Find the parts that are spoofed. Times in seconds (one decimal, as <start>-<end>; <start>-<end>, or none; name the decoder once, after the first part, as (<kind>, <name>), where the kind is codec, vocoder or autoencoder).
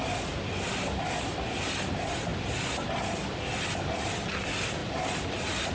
none